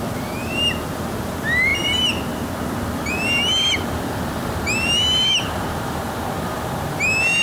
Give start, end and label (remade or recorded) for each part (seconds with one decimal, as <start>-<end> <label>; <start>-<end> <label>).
0.0-7.4 recorded